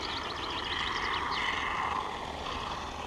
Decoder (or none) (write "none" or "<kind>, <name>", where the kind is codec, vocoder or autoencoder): none